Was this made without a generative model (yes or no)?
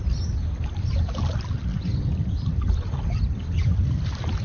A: yes